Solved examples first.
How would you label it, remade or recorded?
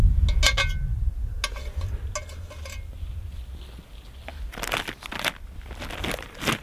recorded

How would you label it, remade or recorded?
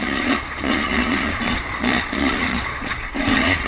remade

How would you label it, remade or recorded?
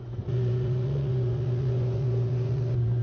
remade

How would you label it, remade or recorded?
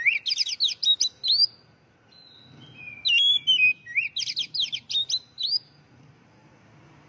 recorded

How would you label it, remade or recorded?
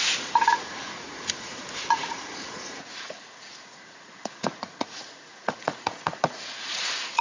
remade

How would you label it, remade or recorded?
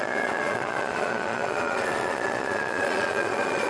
remade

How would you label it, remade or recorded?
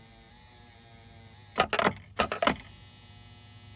recorded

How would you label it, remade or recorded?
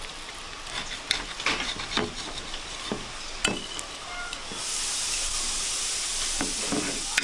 recorded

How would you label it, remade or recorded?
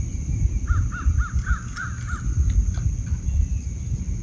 recorded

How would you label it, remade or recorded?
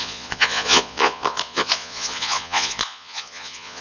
remade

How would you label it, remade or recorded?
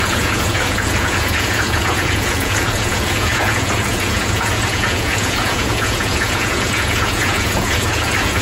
remade